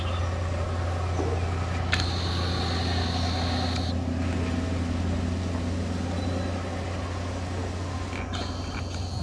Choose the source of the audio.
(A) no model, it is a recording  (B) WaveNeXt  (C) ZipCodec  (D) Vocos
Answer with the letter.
A